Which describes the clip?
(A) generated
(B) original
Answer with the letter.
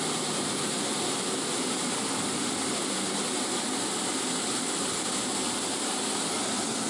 A